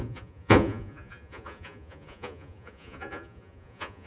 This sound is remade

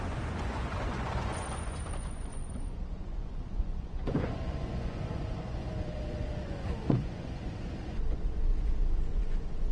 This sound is remade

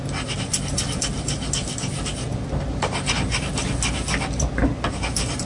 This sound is recorded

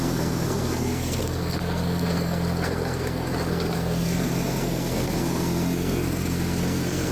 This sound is remade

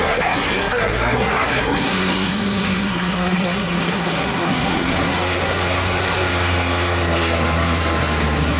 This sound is remade